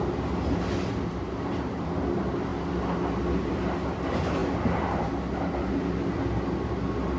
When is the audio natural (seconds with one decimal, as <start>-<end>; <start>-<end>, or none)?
0.0-7.2